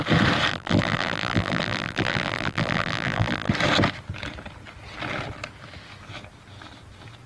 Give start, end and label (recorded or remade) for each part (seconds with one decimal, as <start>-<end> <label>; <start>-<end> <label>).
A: 0.0-0.5 recorded; 0.5-3.5 remade; 3.5-7.3 recorded